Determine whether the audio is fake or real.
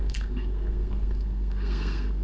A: fake